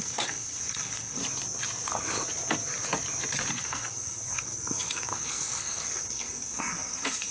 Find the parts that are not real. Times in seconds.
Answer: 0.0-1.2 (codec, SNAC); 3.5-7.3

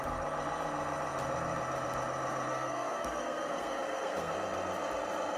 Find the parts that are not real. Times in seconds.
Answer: 2.5-4.3 (codec, SNAC)